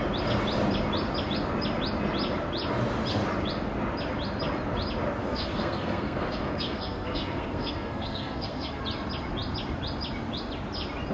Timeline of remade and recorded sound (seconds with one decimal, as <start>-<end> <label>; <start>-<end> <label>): 0.0-5.2 recorded; 5.2-8.8 remade; 8.8-11.1 recorded